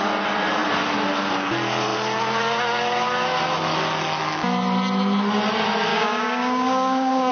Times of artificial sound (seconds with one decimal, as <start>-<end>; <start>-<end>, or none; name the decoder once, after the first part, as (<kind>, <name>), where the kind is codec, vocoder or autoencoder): 5.9-7.3 (codec, DAC)